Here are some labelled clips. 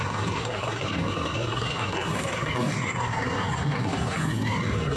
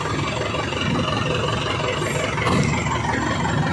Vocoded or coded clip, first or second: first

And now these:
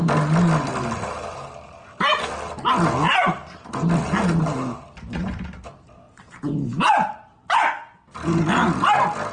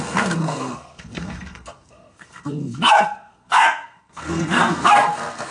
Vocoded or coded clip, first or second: second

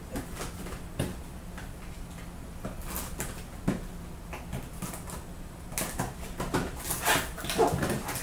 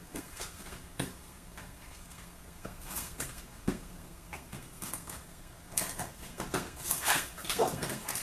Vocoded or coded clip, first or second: second